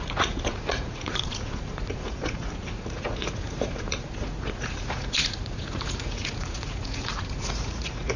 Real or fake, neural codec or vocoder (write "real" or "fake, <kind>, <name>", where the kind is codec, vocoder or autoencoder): fake, vocoder, Vocos